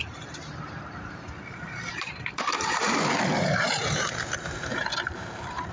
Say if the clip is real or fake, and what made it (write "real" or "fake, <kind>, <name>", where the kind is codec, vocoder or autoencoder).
fake, vocoder, BigVGAN v2